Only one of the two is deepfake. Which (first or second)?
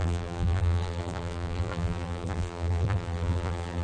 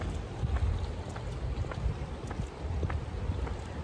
first